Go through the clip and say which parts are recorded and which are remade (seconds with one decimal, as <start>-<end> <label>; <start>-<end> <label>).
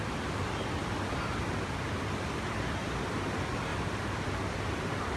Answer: 0.0-5.2 recorded